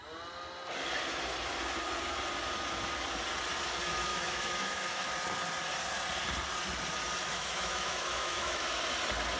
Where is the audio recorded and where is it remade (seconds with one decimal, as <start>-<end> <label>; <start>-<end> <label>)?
0.0-4.1 recorded; 4.1-5.1 remade; 5.1-7.2 recorded; 7.2-8.8 remade; 8.8-9.4 recorded